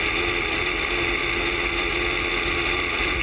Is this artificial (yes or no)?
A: no